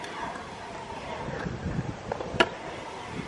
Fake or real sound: real